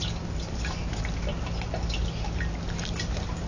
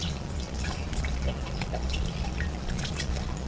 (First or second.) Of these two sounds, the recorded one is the first